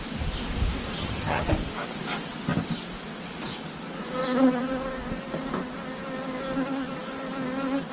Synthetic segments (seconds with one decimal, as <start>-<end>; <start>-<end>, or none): 1.0-1.5